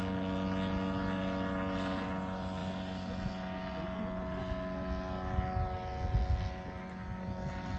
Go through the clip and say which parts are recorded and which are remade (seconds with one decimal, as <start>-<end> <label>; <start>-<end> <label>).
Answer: 0.0-7.8 recorded